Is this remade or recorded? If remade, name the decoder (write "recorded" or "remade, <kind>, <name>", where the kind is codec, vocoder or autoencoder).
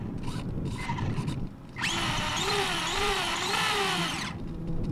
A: remade, vocoder, BigVGAN v2